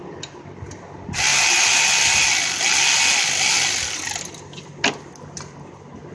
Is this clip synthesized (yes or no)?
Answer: no